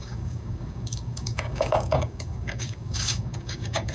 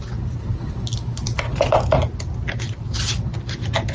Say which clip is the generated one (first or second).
first